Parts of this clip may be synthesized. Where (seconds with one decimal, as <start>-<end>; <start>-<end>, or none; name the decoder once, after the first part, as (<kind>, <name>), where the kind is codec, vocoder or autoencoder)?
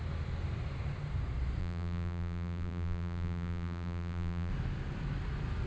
1.6-4.5 (vocoder, BigVGAN v2)